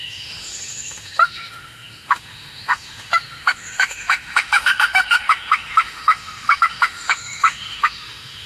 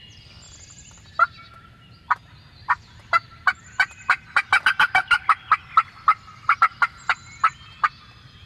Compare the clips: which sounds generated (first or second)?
first